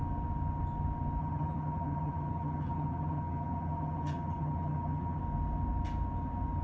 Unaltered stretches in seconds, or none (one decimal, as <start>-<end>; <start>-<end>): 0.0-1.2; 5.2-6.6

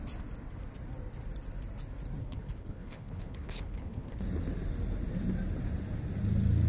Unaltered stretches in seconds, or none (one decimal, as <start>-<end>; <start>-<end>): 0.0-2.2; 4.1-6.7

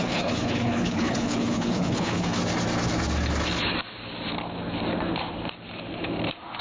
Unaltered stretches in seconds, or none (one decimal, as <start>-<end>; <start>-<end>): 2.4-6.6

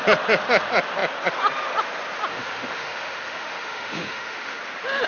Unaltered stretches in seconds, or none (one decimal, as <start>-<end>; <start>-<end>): 0.0-2.3; 4.6-5.1

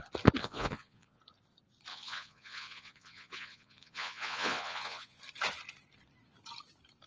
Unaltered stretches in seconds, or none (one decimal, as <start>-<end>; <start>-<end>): 0.0-0.4; 1.2-1.9; 5.2-7.1

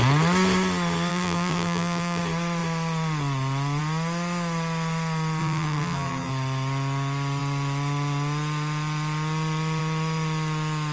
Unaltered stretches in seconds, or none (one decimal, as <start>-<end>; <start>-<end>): 0.0-1.1; 2.2-5.4; 6.3-10.9

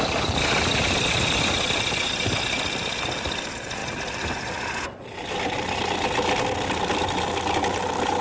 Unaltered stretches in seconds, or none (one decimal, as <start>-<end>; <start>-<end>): 0.0-8.2